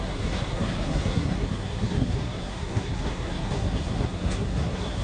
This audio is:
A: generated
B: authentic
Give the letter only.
A